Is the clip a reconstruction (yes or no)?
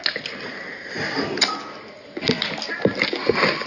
no